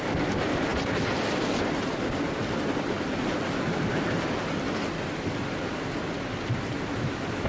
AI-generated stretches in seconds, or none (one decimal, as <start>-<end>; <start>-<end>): none